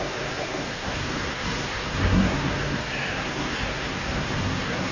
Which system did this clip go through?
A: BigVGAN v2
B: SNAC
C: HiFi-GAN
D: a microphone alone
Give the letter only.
B